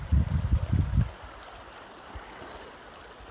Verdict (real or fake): real